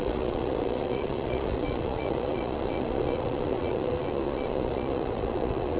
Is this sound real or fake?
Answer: fake